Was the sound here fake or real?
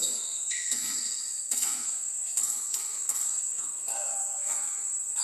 fake